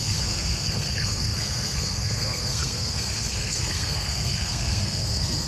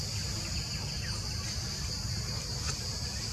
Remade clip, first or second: first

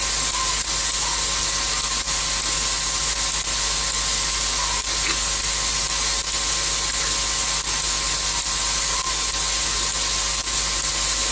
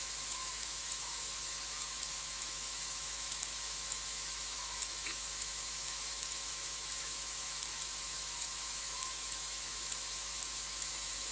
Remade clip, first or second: second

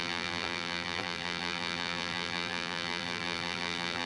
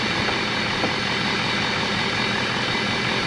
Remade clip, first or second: first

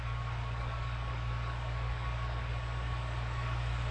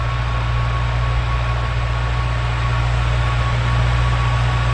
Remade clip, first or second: first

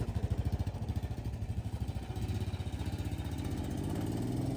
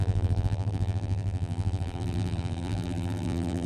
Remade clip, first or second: second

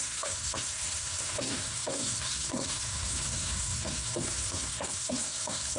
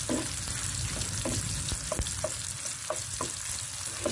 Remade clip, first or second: first